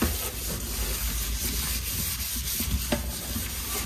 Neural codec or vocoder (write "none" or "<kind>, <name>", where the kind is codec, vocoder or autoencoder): none